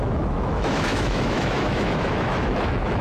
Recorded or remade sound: remade